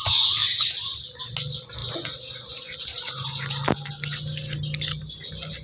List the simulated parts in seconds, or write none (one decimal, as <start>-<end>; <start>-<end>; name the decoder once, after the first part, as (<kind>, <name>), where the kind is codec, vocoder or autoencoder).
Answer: none